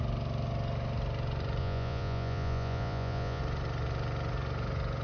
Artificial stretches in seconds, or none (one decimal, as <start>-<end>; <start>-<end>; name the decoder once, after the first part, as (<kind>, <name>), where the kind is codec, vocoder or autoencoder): 1.6-3.4 (vocoder, Vocos)